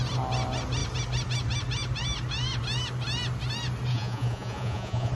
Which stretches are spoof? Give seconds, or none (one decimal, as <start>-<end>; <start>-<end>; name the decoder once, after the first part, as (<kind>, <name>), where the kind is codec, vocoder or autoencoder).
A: 3.9-5.1 (vocoder, Vocos)